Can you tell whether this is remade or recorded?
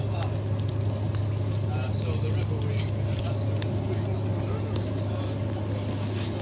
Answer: recorded